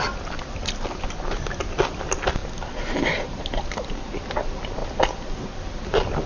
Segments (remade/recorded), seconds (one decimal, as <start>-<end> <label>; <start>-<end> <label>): 0.0-6.3 recorded